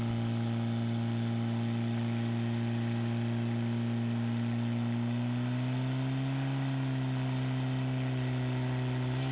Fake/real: real